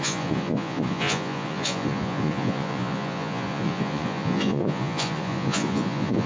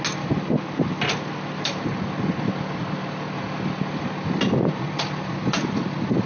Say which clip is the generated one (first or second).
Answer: first